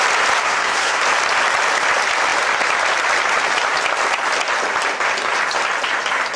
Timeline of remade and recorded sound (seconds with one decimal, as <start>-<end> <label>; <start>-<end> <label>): 0.0-0.4 recorded; 0.4-1.0 remade; 1.0-6.4 recorded